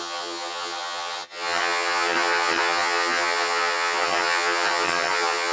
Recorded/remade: remade